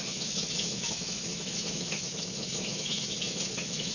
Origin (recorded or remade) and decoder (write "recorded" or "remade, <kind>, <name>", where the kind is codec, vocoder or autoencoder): remade, autoencoder, DAC-VAE